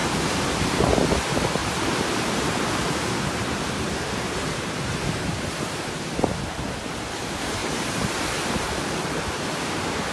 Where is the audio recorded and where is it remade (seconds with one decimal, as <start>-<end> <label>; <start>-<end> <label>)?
0.0-0.8 remade; 0.8-1.6 recorded; 1.6-6.0 remade; 6.0-7.6 recorded; 7.6-8.8 remade; 8.8-10.1 recorded